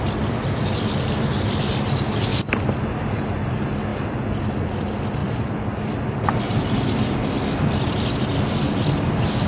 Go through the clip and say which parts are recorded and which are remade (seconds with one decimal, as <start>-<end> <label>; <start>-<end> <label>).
0.0-5.2 recorded; 5.2-7.0 remade; 7.0-9.5 recorded